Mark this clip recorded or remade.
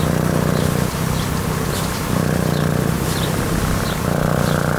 remade